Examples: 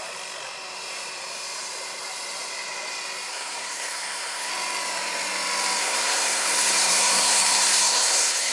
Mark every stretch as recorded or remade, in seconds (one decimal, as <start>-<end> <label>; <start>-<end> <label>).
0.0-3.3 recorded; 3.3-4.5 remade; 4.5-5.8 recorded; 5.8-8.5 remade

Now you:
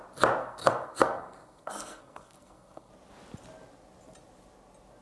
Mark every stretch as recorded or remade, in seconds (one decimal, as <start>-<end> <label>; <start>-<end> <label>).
0.0-0.4 recorded; 0.4-2.9 remade; 2.9-5.0 recorded

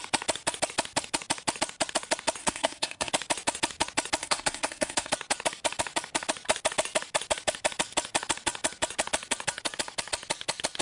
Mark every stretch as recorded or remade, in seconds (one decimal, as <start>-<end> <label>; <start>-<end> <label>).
0.0-2.4 recorded; 2.4-3.1 remade; 3.1-4.2 recorded; 4.2-5.1 remade; 5.1-10.8 recorded

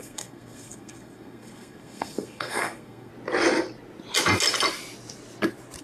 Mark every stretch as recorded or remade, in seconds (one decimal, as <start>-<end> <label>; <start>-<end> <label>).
0.0-3.1 remade; 3.1-5.8 recorded

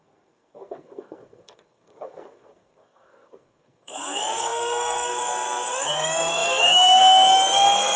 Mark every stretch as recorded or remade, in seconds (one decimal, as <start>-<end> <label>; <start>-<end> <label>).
0.0-8.0 remade

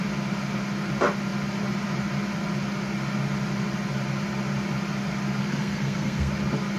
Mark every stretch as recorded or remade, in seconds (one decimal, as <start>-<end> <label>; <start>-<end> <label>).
0.0-5.4 recorded; 5.4-6.3 remade; 6.3-6.8 recorded